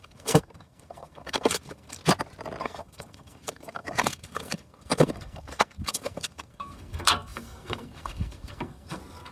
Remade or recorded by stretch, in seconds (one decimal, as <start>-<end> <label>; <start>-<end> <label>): 0.0-2.0 remade; 2.0-2.6 recorded; 2.6-9.3 remade